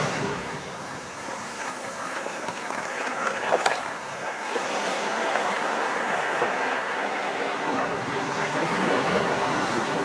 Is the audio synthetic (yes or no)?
yes